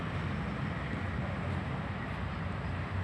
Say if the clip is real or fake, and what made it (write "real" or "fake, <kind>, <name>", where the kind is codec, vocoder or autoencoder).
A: real